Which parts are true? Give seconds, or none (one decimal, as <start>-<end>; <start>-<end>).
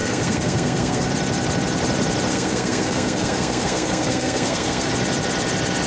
1.1-2.3; 4.9-5.9